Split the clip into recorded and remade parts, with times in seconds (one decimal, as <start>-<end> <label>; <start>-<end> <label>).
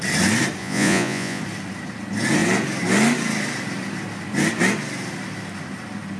0.0-0.6 recorded; 0.6-1.4 remade; 1.4-6.2 recorded